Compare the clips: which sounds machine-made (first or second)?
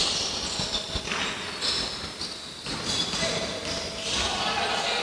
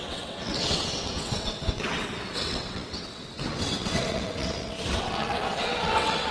second